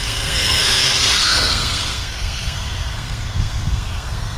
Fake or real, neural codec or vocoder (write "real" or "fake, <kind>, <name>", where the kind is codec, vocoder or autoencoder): fake, codec, SNAC